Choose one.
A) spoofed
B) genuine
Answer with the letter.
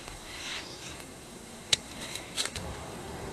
A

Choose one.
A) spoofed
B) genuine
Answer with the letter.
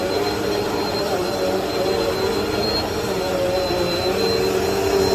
B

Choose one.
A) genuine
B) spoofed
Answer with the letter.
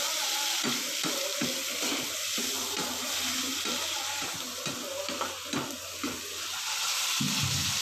A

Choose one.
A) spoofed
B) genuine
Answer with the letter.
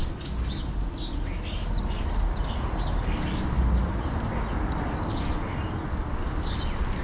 B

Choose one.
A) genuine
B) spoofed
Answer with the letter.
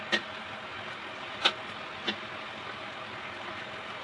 A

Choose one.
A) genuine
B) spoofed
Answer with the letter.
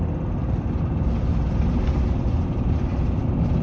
A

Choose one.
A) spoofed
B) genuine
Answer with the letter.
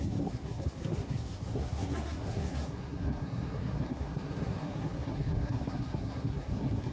A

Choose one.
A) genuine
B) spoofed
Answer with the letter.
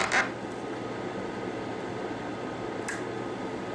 A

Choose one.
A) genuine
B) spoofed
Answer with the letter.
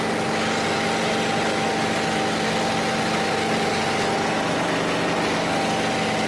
A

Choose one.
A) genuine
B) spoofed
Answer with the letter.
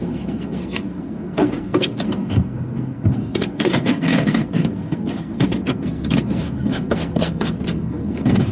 B